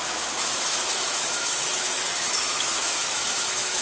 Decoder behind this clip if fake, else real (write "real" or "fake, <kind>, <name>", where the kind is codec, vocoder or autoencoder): fake, autoencoder, DAC-VAE